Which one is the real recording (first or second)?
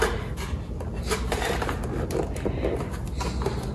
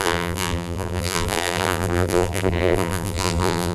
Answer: first